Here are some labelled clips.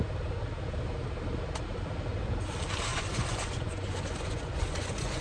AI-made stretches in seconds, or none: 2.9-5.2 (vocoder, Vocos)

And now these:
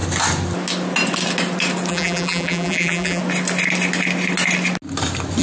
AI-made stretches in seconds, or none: 1.9-3.2 (vocoder, BigVGAN v2)

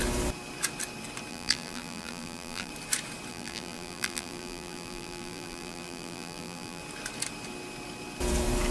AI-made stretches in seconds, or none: 1.3-2.7 (vocoder, BigVGAN v2); 3.3-6.8

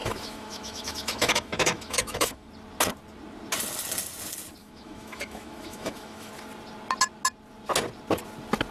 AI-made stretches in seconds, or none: 0.0-2.5 (autoencoder, DAC-VAE); 4.6-6.3

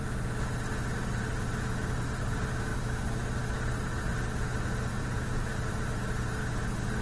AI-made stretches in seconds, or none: 4.9-5.5 (vocoder, Vocos)